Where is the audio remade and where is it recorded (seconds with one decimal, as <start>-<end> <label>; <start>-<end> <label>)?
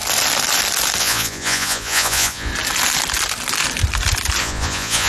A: 0.0-1.0 recorded; 1.0-2.5 remade; 2.5-4.4 recorded; 4.4-5.1 remade